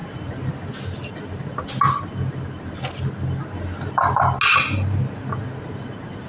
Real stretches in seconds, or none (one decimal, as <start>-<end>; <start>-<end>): 0.0-6.3